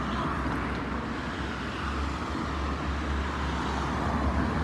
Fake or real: real